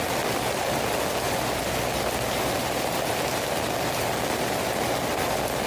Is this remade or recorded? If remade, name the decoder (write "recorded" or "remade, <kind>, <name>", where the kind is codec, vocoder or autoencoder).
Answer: recorded